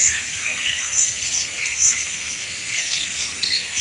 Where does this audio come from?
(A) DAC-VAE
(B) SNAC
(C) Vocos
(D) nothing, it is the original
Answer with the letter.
B